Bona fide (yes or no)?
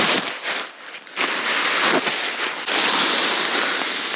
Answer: yes